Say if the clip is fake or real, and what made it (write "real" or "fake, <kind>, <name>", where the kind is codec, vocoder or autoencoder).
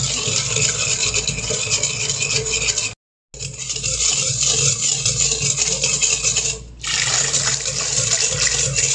real